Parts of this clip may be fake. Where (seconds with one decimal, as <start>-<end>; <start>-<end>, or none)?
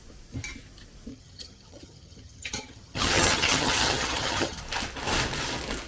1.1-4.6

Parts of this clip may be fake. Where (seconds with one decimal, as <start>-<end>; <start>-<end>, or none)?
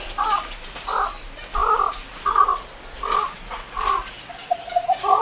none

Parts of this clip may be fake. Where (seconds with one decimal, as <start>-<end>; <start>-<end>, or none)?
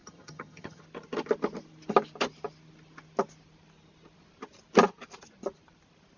0.0-0.8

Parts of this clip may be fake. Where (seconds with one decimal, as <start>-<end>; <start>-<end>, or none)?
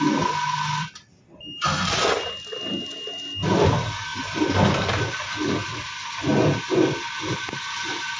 none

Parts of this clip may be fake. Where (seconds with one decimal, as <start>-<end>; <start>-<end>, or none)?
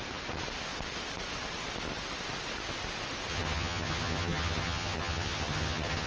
3.3-6.1